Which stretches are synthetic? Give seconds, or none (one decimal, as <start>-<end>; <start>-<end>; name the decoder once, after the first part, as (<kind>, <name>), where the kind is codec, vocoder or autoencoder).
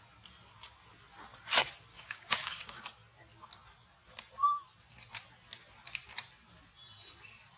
1.9-2.8 (codec, DAC)